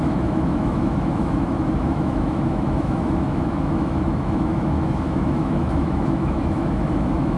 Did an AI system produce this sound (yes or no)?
yes